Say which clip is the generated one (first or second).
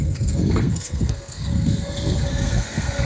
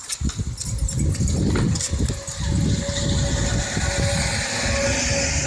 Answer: first